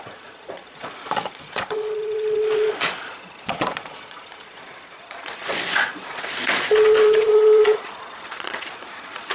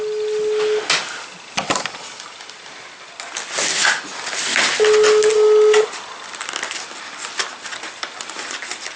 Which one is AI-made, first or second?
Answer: first